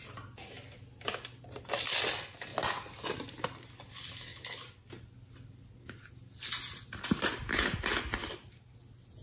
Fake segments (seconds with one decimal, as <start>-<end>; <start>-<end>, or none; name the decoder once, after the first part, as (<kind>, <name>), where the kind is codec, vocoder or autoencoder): none